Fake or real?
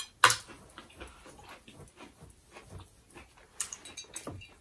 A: real